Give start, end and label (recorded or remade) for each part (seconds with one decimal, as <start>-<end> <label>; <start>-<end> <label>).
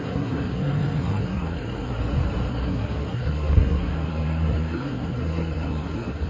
0.0-2.0 remade; 2.0-2.5 recorded; 2.5-6.3 remade